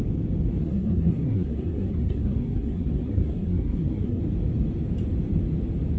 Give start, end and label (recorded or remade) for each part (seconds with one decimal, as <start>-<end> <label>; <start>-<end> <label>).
0.0-0.6 recorded; 0.6-4.2 remade; 4.2-6.0 recorded